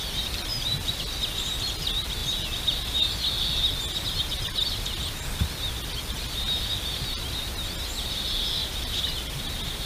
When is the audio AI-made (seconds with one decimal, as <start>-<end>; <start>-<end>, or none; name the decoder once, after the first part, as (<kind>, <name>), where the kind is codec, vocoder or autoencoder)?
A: 0.5-1.0 (vocoder, BigVGAN v2); 8.6-9.5